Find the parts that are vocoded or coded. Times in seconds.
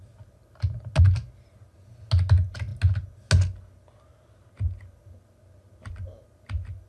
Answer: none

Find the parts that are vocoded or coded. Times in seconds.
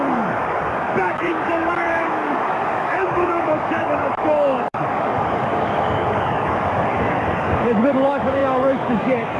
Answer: 0.0-9.4